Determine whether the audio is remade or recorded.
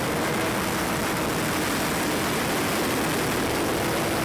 recorded